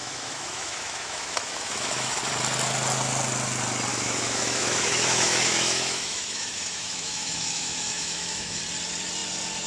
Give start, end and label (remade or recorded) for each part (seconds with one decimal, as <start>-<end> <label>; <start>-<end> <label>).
0.0-2.2 remade; 2.2-3.9 recorded; 3.9-8.6 remade; 8.6-9.7 recorded